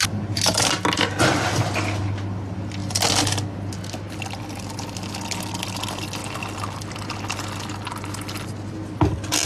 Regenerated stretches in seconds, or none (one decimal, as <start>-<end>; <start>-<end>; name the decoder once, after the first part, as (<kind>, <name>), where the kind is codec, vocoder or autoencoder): none